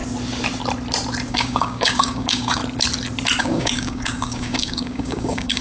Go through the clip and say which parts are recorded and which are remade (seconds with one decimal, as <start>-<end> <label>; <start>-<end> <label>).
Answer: 0.0-1.3 recorded; 1.3-2.6 remade; 2.6-3.4 recorded; 3.4-5.6 remade